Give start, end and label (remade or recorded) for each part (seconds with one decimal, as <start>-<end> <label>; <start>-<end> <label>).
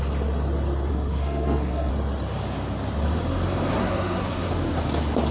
0.0-0.9 recorded; 0.9-1.9 remade; 1.9-3.7 recorded; 3.7-4.5 remade; 4.5-5.3 recorded